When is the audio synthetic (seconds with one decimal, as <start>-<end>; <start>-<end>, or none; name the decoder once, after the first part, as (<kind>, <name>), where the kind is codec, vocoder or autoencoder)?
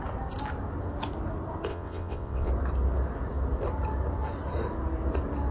1.7-2.5 (vocoder, WaveNeXt)